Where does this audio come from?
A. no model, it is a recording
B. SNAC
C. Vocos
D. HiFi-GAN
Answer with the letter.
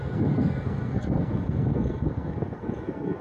B